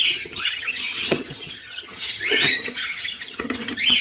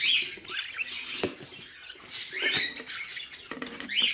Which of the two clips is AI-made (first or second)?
first